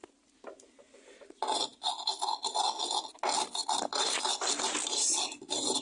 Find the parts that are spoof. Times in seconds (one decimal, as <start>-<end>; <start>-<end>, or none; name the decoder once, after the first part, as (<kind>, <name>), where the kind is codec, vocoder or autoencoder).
none

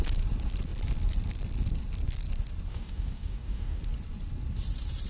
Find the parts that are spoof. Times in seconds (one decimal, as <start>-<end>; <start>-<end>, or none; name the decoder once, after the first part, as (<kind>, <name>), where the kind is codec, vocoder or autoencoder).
2.7-3.8 (codec, DAC)

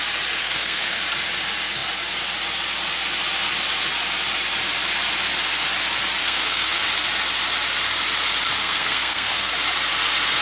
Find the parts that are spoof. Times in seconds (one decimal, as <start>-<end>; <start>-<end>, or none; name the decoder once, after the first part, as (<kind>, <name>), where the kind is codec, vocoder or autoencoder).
0.4-1.0 (codec, SNAC); 6.2-6.8; 8.6-9.5